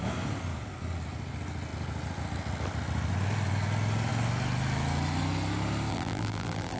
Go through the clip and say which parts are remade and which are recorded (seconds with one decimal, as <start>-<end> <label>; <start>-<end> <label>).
0.0-5.9 recorded; 5.9-6.8 remade